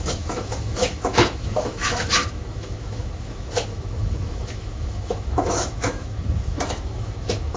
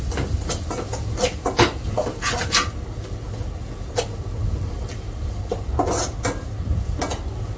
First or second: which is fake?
first